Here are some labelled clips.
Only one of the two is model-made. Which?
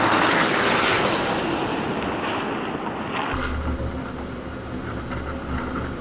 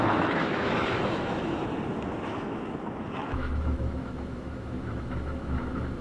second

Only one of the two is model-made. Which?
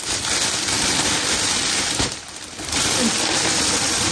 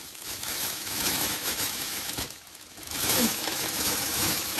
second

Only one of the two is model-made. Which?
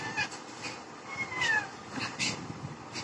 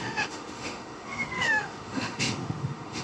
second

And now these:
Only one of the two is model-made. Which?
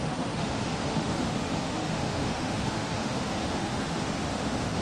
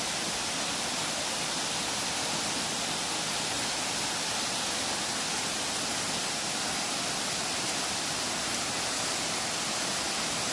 first